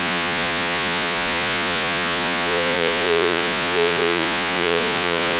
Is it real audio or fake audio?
fake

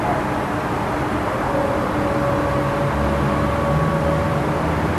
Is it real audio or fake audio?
real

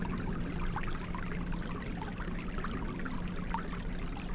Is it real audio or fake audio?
real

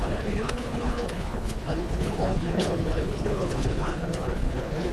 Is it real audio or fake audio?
fake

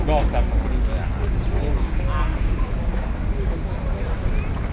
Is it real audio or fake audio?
real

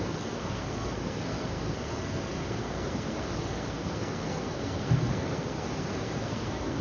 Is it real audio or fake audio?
fake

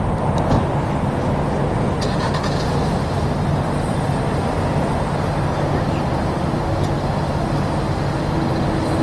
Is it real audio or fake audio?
real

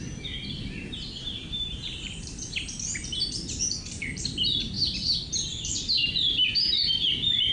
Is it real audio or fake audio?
fake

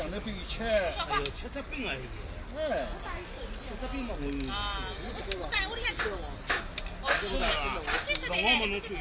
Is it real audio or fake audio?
real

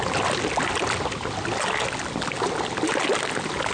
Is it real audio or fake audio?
real